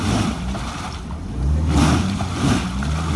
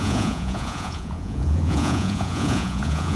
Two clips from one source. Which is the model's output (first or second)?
second